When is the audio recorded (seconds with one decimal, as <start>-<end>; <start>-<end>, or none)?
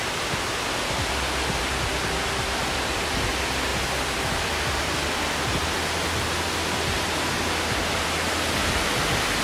0.0-2.6; 3.3-3.7; 5.4-9.4